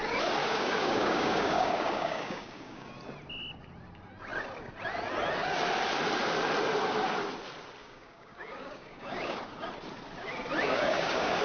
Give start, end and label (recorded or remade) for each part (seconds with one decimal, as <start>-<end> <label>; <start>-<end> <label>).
0.0-0.4 recorded; 0.4-2.9 remade; 2.9-7.8 recorded; 7.8-9.4 remade; 9.4-10.6 recorded; 10.6-11.4 remade